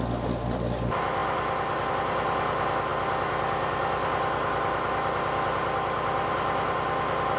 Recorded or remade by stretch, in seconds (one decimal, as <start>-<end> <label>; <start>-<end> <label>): 0.0-7.4 recorded